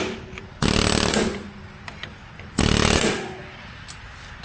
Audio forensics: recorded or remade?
recorded